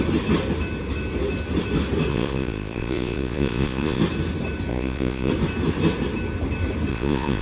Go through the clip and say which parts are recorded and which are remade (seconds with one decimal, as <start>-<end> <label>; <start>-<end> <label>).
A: 0.0-2.1 recorded; 2.1-4.0 remade; 4.0-4.7 recorded; 4.7-5.3 remade; 5.3-6.9 recorded; 6.9-7.4 remade